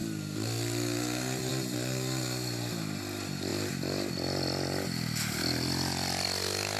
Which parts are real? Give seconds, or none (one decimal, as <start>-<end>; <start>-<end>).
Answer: 0.0-6.8